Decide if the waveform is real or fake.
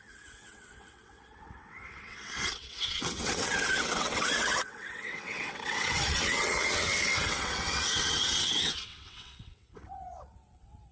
fake